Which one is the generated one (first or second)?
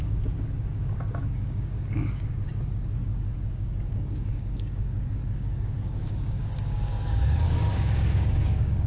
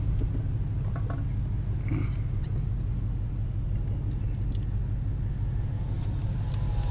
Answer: first